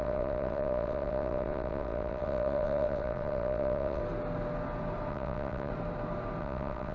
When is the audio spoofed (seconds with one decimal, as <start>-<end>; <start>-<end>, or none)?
0.0-4.0; 5.1-5.7; 6.4-6.9